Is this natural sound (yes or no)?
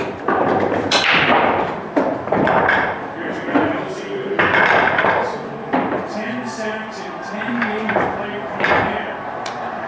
no